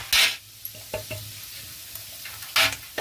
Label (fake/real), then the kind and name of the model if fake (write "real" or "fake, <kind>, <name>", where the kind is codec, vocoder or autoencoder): real